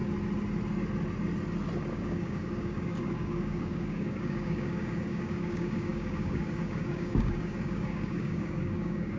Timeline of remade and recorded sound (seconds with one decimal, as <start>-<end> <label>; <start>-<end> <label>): 0.0-1.9 recorded; 1.9-9.2 remade